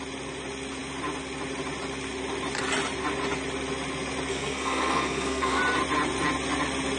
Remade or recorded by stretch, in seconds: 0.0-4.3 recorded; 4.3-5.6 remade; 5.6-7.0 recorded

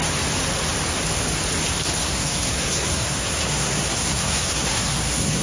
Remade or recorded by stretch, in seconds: 0.0-2.0 recorded; 2.0-5.4 remade

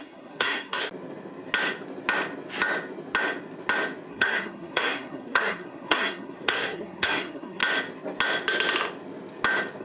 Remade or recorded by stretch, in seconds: 0.0-0.8 remade; 0.8-4.1 recorded; 4.1-7.6 remade; 7.6-9.8 recorded

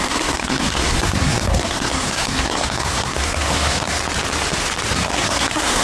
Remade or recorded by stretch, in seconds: 0.0-4.0 remade; 4.0-4.9 recorded; 4.9-5.8 remade